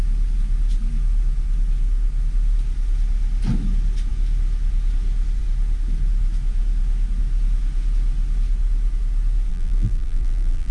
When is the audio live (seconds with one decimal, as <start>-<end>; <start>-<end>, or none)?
0.0-9.5

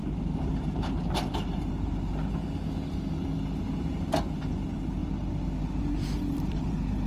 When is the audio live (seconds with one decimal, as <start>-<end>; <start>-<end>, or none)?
2.1-4.4; 5.0-5.8

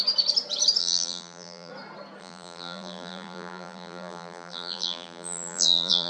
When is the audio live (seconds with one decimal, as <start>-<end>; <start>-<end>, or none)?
0.0-0.8; 1.7-2.2

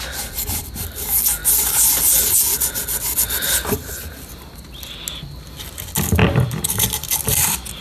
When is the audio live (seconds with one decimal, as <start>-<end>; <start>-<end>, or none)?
0.0-6.2; 7.1-7.8